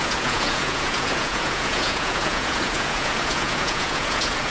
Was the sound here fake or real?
fake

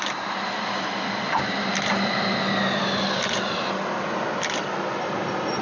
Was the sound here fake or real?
real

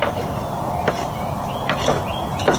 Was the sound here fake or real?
real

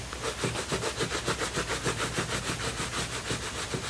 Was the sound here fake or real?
real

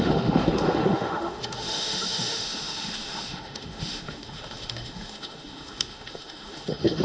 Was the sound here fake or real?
fake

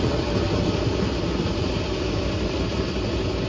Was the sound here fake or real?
real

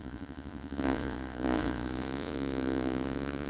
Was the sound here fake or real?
fake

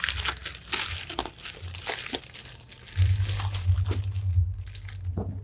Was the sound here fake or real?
real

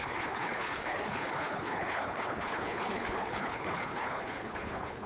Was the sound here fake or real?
fake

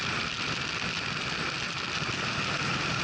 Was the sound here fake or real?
real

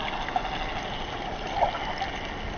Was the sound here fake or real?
real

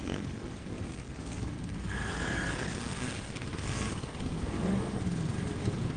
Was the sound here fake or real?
fake